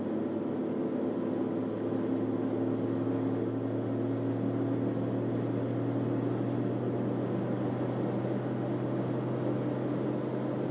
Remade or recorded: recorded